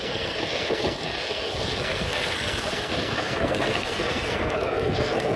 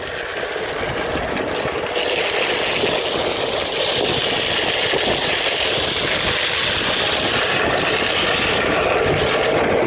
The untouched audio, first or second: second